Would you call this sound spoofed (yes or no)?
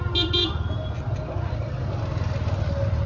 no